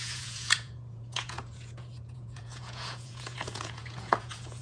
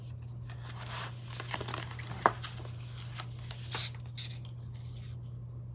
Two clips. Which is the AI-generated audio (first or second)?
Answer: first